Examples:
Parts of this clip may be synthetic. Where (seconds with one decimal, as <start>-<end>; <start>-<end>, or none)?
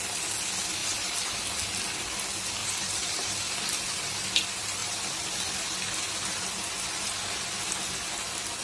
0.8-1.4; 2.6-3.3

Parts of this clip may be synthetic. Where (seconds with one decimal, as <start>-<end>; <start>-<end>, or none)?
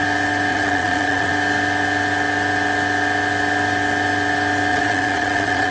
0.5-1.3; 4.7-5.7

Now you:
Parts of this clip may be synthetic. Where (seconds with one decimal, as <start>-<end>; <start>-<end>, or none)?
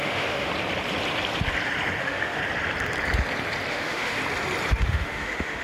0.0-0.5; 2.0-2.4; 3.7-4.2; 4.9-5.6